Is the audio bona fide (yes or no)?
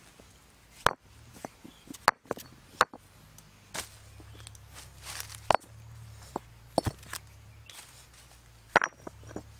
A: yes